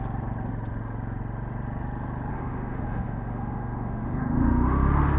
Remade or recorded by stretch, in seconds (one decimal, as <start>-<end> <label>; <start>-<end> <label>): 0.0-2.3 recorded; 2.3-5.2 remade